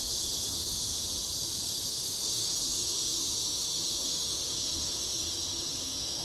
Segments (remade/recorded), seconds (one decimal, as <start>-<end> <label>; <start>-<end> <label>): 0.0-1.1 remade; 1.1-1.9 recorded; 1.9-6.2 remade